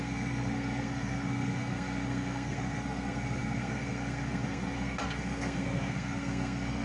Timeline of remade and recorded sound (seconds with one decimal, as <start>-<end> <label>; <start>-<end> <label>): 0.0-6.8 remade